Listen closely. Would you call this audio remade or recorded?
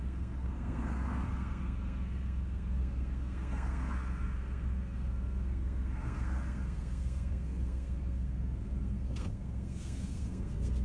remade